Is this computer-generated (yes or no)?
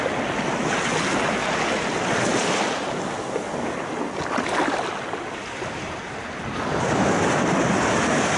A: no